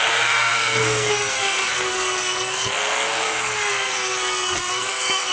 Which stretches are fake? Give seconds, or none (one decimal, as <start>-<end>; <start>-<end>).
0.0-5.3